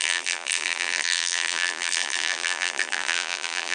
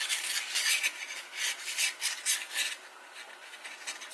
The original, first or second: second